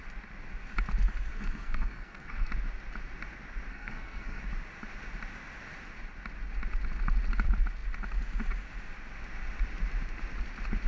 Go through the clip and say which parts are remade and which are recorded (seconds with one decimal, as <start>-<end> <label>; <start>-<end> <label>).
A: 0.0-1.3 recorded; 1.3-2.5 remade; 2.5-3.7 recorded; 3.7-4.4 remade; 4.4-10.9 recorded